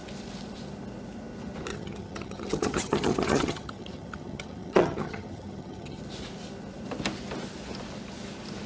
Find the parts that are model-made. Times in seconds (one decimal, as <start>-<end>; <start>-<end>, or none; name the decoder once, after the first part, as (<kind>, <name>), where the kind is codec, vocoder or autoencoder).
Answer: 1.7-6.0 (vocoder, HiFi-GAN)